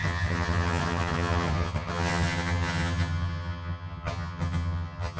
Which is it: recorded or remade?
remade